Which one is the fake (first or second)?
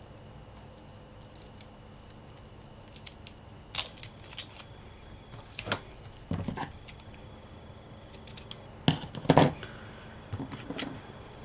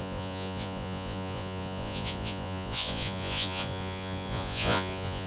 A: second